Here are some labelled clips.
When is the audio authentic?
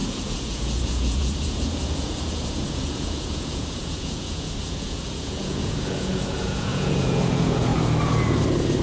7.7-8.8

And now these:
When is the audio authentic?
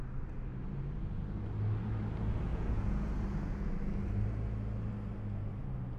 0.0-2.5; 3.7-6.0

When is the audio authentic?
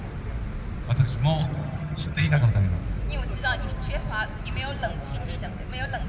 0.0-1.4; 2.4-6.1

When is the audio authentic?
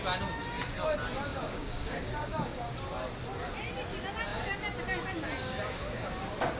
0.0-1.3; 2.7-5.4; 6.1-6.6